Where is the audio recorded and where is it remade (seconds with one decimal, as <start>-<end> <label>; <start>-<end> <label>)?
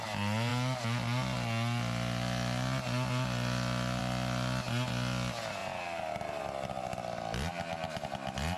0.0-8.6 recorded